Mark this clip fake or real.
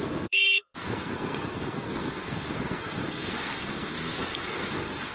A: fake